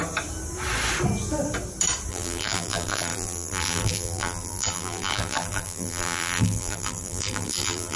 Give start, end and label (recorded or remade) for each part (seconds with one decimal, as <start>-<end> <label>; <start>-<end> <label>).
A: 0.0-2.1 recorded; 2.1-8.0 remade